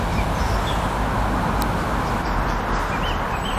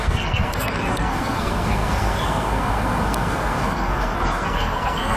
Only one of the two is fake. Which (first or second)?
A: second